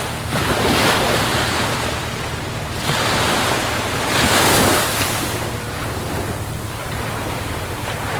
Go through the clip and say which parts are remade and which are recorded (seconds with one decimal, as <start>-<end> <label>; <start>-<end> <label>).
0.0-1.3 remade; 1.3-6.1 recorded; 6.1-8.2 remade